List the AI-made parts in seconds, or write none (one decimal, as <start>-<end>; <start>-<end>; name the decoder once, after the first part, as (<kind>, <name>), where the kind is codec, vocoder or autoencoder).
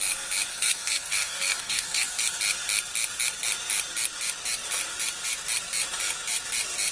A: 0.5-2.4 (codec, SNAC)